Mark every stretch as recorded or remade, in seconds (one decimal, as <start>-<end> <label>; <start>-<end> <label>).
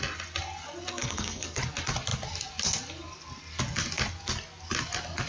0.0-0.9 recorded; 0.9-1.6 remade; 1.6-5.3 recorded